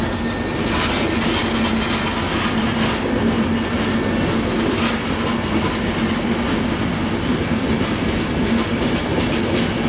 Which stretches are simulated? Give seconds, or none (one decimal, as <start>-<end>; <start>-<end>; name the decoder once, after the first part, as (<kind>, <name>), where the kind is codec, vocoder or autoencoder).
none